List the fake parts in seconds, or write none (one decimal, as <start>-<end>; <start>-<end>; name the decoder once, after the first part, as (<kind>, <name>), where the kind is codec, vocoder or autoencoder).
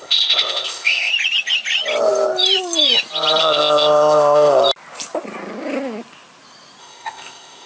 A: 0.0-1.1 (codec, ZipCodec); 3.4-4.6; 6.8-7.7